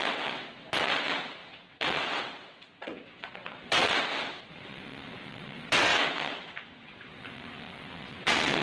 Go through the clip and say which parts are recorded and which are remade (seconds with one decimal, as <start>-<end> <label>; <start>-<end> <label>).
0.0-8.6 remade